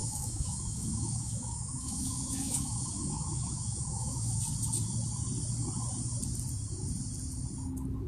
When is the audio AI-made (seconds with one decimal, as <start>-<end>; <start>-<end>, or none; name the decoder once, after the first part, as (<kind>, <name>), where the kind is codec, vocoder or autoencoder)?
0.0-4.4 (autoencoder, DAC-VAE)